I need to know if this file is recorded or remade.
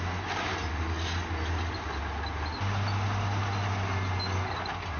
recorded